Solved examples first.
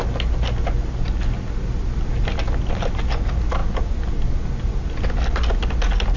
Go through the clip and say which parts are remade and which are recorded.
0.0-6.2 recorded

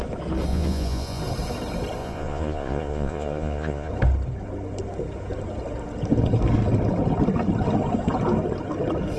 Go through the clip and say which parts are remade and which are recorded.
0.0-0.5 recorded; 0.5-1.2 remade; 1.2-2.0 recorded; 2.0-3.9 remade; 3.9-9.2 recorded

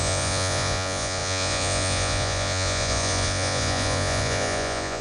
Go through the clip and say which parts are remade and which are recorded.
0.0-5.0 remade

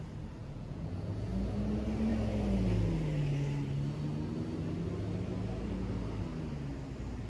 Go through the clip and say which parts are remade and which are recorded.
0.0-0.4 recorded; 0.4-1.3 remade; 1.3-7.3 recorded

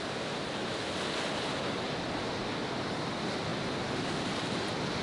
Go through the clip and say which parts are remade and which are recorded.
0.0-5.0 recorded

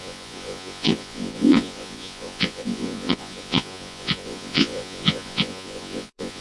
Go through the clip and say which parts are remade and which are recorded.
0.0-6.4 remade

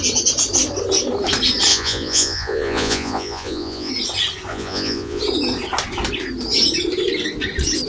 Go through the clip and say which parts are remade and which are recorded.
0.0-1.7 recorded; 1.7-3.9 remade; 3.9-4.5 recorded; 4.5-5.2 remade; 5.2-7.9 recorded

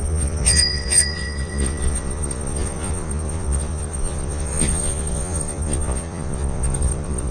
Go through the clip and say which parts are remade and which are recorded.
0.0-7.3 remade